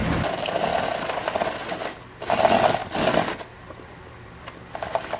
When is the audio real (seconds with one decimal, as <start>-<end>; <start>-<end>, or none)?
0.0-5.2